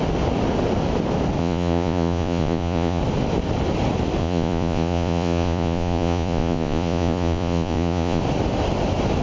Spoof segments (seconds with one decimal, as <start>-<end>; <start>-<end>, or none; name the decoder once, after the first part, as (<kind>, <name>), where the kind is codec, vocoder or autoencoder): 1.4-3.0 (vocoder, Vocos); 4.2-8.2